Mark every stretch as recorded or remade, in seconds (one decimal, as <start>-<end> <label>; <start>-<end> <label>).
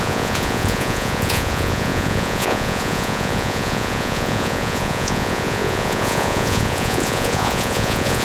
0.0-8.2 remade